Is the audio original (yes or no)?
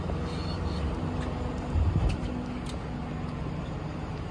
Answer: yes